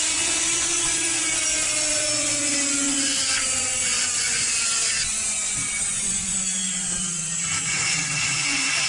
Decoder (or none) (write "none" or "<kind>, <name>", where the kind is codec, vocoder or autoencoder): vocoder, Vocos